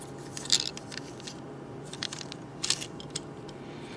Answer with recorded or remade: remade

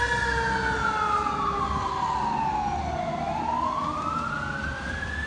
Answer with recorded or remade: recorded